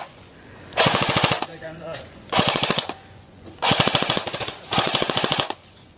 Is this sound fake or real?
fake